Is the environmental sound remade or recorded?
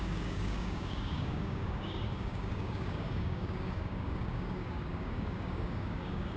remade